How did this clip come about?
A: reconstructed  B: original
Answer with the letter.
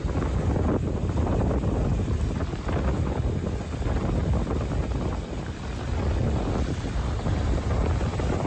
B